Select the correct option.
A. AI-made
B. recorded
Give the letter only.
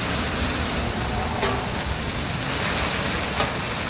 B